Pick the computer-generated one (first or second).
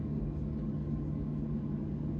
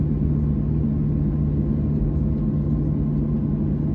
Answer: first